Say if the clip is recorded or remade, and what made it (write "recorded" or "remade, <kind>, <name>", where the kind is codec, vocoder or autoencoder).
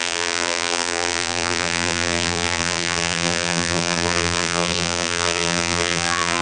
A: remade, vocoder, BigVGAN v2